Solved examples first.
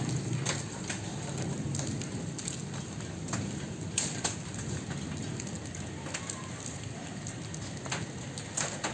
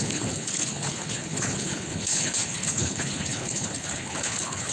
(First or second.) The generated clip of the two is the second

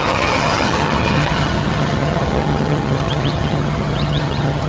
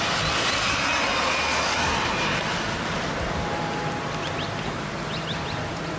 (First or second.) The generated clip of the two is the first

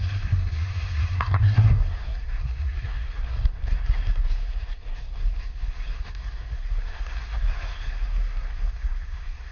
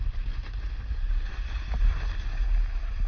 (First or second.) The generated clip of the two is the first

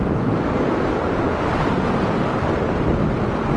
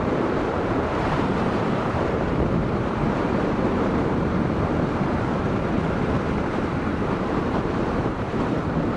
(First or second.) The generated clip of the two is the second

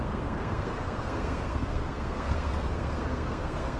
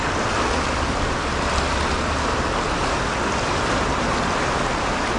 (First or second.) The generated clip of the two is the first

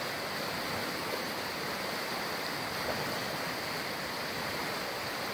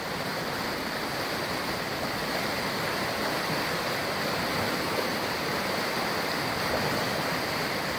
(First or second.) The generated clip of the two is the second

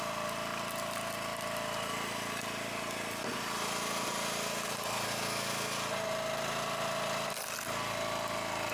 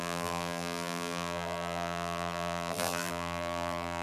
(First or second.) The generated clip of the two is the second